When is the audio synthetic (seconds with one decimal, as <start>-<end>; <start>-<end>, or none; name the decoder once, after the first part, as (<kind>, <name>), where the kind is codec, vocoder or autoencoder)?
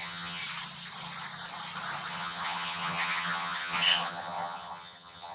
0.0-0.4 (vocoder, HiFi-GAN); 2.1-5.3